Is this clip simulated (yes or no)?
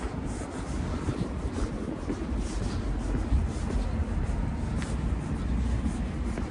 no